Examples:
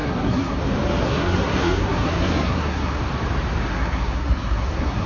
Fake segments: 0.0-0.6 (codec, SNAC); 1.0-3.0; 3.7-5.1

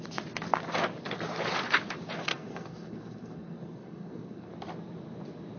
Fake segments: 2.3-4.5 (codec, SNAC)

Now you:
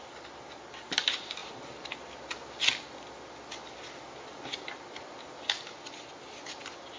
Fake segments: none